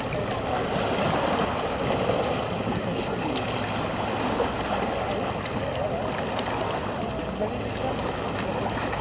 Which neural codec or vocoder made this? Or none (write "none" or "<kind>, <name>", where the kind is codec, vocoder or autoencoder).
none